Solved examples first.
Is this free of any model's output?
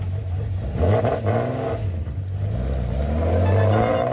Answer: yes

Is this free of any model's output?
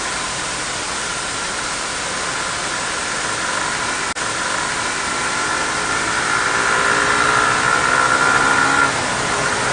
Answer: yes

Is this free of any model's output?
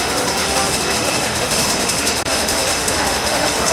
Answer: no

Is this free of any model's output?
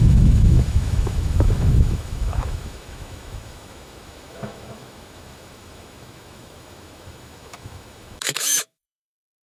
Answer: no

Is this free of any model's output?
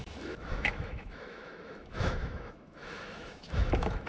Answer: no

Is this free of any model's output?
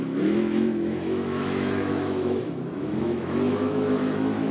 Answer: no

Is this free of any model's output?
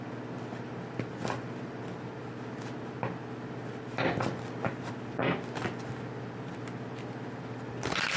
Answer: yes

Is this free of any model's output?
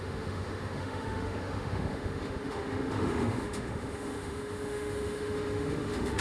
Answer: no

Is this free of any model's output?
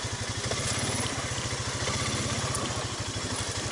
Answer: yes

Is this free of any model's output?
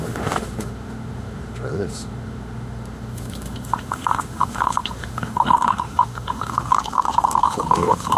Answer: no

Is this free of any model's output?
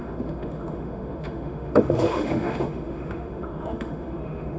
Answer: no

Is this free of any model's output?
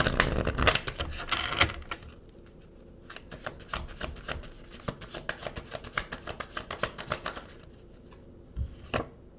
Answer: yes